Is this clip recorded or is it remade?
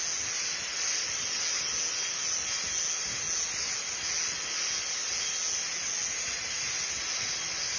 recorded